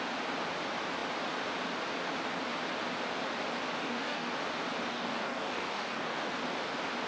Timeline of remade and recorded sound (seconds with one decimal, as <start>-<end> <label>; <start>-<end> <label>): 0.0-3.8 recorded; 3.8-4.3 remade; 4.3-4.9 recorded; 4.9-6.3 remade; 6.3-7.1 recorded